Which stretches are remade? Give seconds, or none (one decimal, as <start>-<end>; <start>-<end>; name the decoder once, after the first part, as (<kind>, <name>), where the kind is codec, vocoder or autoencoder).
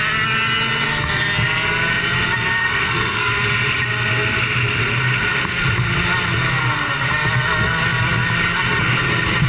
2.6-3.3 (codec, SNAC)